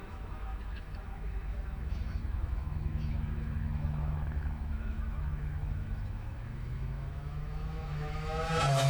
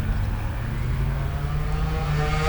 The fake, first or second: first